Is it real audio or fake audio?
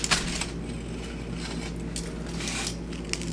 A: real